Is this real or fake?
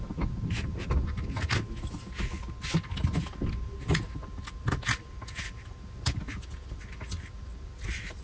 real